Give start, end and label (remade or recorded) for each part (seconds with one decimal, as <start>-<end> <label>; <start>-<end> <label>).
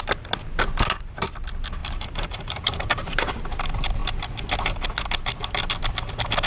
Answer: 0.0-1.8 recorded; 1.8-3.4 remade; 3.4-6.5 recorded